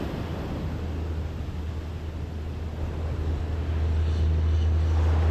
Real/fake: real